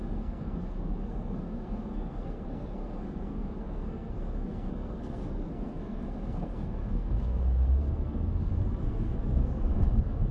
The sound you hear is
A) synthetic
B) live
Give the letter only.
A